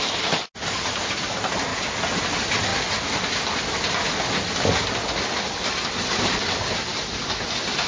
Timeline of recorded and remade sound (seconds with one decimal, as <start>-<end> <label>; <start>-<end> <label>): 0.0-7.9 recorded